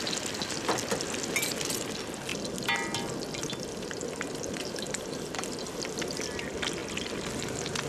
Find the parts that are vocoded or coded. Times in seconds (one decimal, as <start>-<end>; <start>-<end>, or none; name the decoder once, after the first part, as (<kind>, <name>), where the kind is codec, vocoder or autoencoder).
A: none